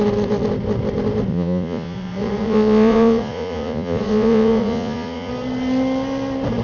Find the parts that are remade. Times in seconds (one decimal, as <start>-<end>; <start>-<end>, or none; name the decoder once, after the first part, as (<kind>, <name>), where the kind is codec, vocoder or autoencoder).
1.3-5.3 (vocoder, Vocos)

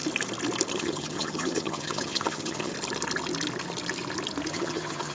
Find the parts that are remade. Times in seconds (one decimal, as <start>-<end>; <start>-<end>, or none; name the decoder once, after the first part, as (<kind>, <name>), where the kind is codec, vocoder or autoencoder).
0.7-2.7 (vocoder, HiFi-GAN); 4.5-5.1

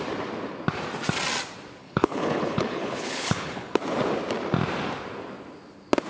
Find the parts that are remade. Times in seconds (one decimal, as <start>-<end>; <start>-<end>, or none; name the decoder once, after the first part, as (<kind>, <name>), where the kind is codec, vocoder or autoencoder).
1.8-3.8 (codec, HILCodec)